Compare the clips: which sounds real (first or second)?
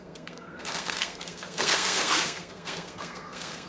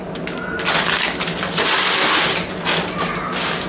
second